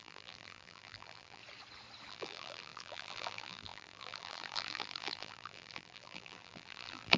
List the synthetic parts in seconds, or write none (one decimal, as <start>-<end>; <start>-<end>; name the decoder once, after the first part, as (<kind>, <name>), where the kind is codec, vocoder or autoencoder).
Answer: 0.0-1.4 (vocoder, BigVGAN v2); 2.1-7.2